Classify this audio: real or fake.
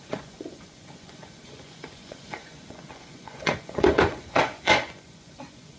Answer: fake